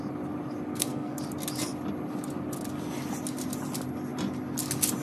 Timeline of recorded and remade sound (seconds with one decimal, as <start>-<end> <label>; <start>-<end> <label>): 0.0-0.7 recorded; 0.7-1.2 remade; 1.2-5.0 recorded